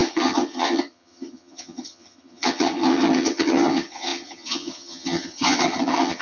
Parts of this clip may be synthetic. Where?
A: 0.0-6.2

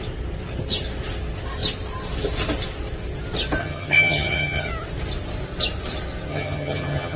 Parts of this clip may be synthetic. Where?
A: 3.6-4.7; 6.3-7.2